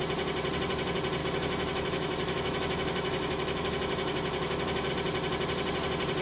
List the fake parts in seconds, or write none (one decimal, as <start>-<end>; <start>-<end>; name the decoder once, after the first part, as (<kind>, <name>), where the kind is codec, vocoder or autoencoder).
1.2-4.9 (autoencoder, DAC-VAE)